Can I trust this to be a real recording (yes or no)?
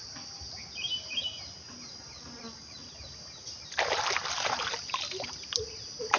yes